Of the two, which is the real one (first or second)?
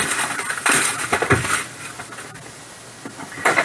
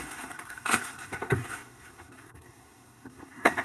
first